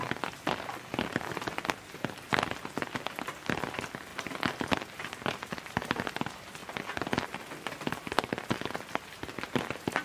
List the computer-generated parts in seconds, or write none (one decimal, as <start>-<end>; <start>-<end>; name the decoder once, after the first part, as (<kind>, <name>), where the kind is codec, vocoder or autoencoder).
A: none